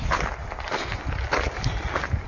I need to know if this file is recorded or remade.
recorded